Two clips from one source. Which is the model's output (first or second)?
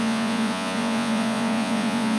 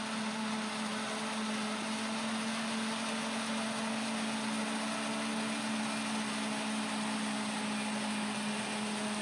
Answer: first